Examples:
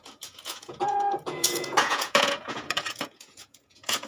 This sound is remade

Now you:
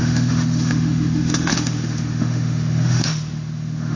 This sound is remade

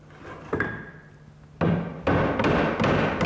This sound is recorded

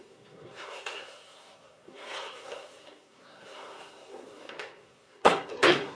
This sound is remade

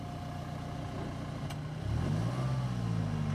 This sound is recorded